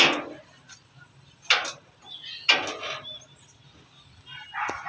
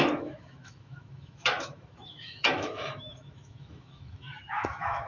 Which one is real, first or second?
first